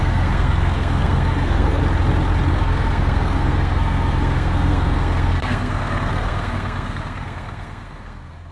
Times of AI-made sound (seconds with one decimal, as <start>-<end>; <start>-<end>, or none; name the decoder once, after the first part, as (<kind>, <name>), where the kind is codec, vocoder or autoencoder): 0.0-1.8 (codec, SNAC); 2.5-8.5